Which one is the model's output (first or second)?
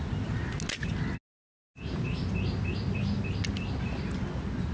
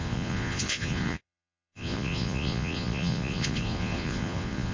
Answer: second